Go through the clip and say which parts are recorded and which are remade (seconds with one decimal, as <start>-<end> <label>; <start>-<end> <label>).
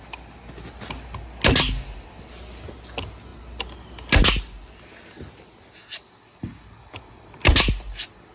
0.0-8.3 recorded